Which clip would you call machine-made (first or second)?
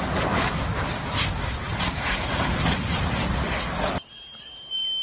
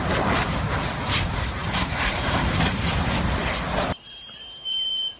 second